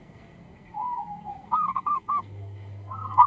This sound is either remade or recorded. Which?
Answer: remade